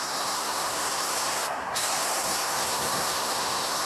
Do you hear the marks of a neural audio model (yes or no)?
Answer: yes